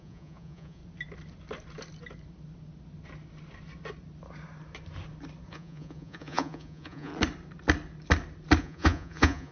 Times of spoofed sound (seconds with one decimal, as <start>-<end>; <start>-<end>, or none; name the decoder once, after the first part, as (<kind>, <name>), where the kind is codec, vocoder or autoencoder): 0.0-0.8 (vocoder, Vocos); 5.5-7.1; 8.6-9.5